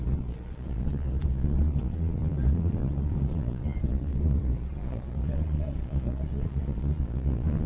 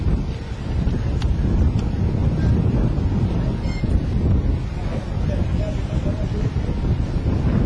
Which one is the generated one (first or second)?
first